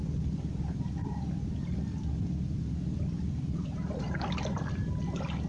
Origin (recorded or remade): remade